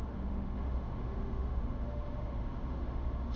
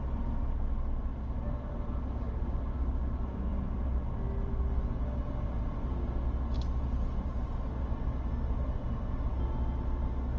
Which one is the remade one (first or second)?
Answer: first